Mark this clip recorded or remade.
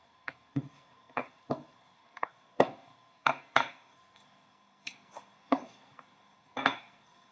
remade